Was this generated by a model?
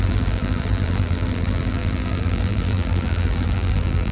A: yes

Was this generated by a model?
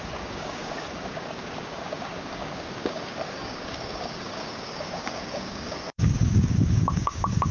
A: yes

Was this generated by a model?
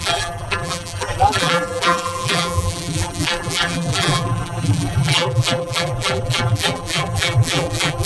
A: yes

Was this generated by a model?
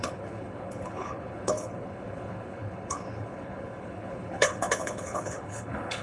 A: yes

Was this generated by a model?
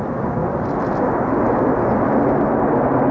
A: no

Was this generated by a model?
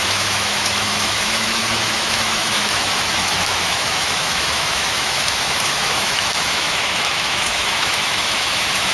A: yes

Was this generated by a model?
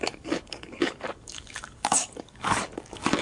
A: yes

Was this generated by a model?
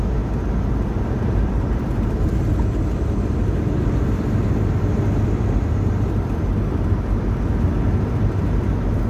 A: no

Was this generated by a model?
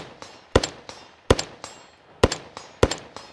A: no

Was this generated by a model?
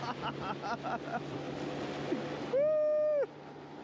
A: no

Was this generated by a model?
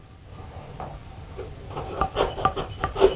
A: no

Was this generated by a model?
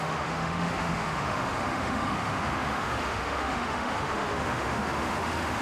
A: yes